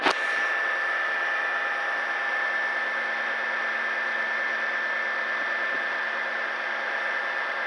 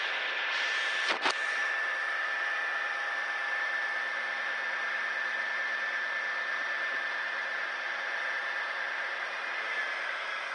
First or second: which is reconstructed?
second